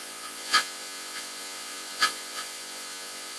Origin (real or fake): fake